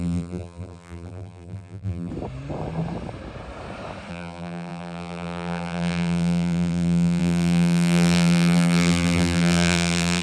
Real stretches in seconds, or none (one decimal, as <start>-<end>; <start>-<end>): 2.1-4.1